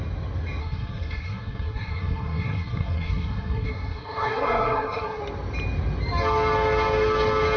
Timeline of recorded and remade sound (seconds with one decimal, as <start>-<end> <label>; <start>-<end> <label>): 0.0-0.6 recorded; 0.6-5.2 remade; 5.2-7.6 recorded